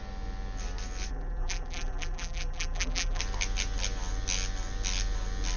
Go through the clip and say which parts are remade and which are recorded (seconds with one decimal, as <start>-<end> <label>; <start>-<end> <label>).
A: 0.0-1.1 recorded; 1.1-3.2 remade; 3.2-5.6 recorded